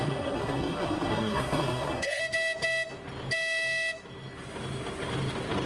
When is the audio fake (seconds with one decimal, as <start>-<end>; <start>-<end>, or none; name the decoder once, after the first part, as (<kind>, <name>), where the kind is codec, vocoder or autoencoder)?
0.0-2.2 (codec, SNAC)